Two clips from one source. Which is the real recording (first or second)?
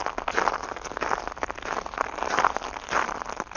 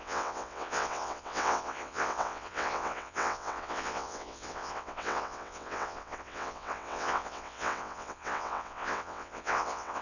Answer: first